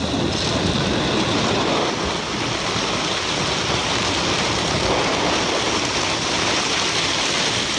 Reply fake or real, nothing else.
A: real